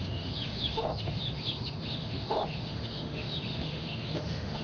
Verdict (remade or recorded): remade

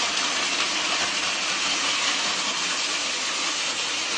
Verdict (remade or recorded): recorded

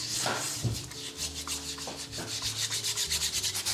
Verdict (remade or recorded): recorded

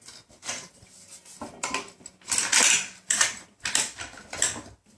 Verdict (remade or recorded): recorded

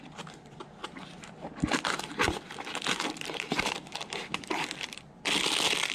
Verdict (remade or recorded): recorded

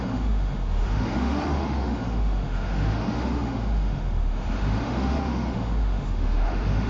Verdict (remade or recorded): remade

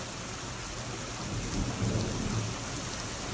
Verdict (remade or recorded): recorded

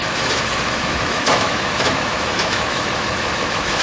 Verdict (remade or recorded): remade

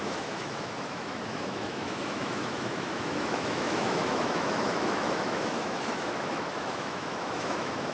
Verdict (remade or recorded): remade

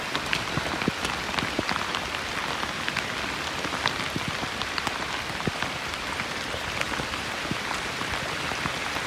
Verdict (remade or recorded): recorded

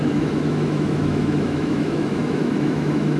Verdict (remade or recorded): remade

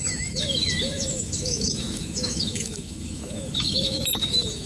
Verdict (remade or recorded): remade